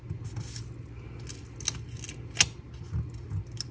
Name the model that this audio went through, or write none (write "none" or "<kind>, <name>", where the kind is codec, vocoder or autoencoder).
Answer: none